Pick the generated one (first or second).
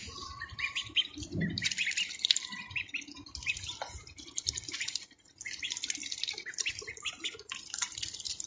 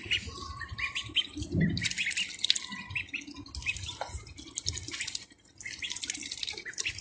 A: first